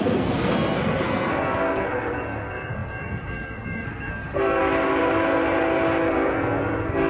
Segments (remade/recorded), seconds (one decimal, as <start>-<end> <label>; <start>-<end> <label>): 0.0-4.6 remade; 4.6-6.0 recorded; 6.0-7.1 remade